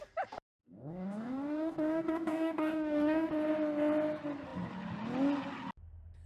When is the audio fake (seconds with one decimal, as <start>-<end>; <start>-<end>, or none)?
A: 0.6-3.3